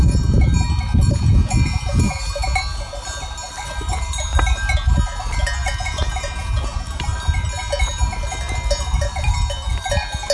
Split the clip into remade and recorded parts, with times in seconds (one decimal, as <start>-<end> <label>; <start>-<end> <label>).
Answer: 0.0-0.9 recorded; 0.9-2.2 remade; 2.2-5.6 recorded; 5.6-7.0 remade; 7.0-10.3 recorded

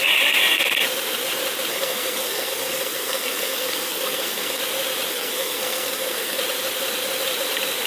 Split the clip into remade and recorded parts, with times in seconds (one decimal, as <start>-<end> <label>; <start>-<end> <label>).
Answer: 0.0-1.7 recorded; 1.7-4.6 remade; 4.6-5.1 recorded; 5.1-6.4 remade; 6.4-7.9 recorded